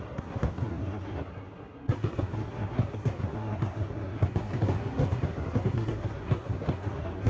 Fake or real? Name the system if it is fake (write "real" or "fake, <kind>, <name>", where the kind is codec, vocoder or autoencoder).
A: fake, codec, SNAC